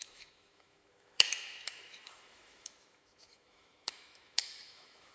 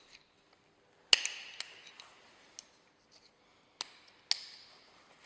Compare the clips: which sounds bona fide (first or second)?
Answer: second